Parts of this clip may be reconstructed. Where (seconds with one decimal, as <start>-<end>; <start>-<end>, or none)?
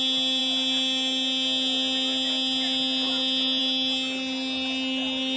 none